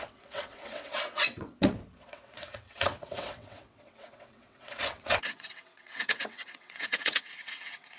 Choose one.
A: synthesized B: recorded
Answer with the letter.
A